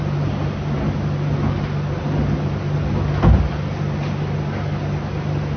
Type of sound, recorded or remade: recorded